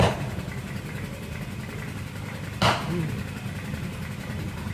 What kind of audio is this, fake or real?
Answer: real